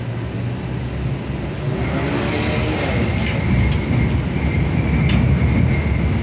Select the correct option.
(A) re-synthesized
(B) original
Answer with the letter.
B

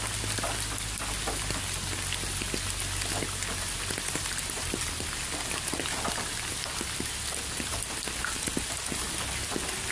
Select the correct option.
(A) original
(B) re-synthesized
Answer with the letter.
A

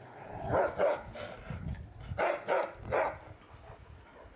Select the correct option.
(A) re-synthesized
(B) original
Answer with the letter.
B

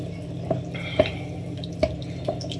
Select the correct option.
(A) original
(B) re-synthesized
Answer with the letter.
A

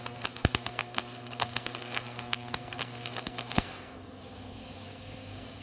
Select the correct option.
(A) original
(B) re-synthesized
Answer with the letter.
B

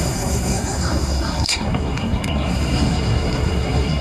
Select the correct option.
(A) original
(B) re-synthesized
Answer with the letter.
B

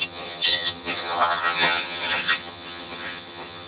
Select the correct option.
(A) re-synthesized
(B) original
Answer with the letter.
A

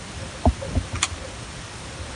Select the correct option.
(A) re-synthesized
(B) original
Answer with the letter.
A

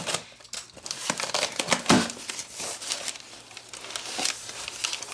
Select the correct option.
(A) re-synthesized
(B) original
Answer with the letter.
B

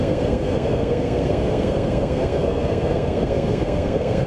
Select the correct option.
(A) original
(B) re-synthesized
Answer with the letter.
B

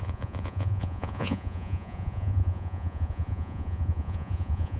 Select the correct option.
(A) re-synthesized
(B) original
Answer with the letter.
A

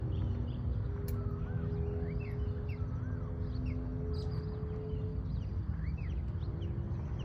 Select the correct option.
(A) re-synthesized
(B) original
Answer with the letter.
B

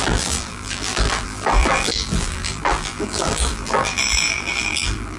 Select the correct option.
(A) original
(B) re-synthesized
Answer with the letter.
B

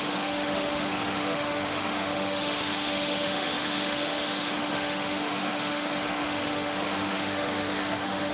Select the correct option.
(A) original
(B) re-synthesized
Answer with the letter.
B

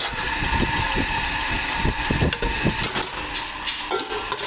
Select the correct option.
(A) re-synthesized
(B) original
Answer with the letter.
B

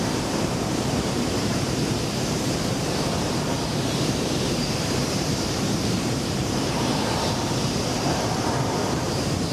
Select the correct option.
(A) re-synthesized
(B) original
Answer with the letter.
A